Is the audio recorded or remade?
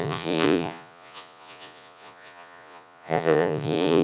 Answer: remade